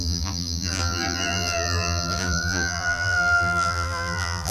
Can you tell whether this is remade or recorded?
remade